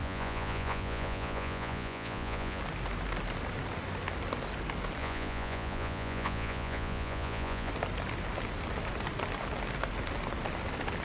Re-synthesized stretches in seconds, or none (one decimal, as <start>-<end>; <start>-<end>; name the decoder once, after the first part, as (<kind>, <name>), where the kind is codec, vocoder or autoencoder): 0.0-2.6 (vocoder, Vocos); 5.0-7.7